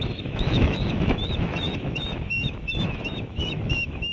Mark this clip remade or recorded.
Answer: remade